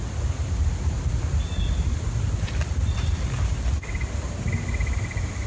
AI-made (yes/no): no